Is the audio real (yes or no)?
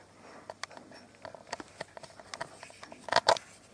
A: yes